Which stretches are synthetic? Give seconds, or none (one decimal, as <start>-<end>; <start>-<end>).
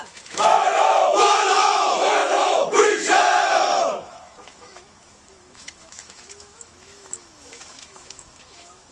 0.0-8.9